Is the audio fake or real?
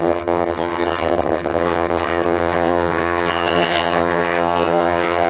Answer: fake